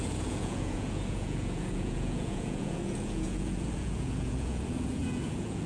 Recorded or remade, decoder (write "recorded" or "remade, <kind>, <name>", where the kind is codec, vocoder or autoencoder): remade, vocoder, Vocos